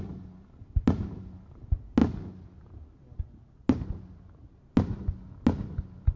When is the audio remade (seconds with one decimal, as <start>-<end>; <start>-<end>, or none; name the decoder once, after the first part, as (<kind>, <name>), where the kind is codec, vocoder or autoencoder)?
none